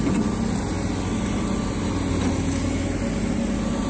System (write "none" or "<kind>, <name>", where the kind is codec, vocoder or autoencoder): none